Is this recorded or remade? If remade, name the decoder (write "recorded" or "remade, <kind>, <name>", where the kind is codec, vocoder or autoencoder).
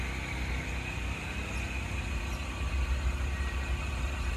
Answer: recorded